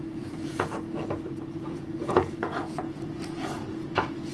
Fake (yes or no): yes